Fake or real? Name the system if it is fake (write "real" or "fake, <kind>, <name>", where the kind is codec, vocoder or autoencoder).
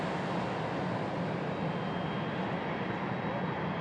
real